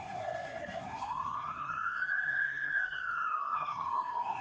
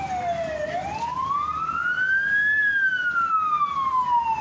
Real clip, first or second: second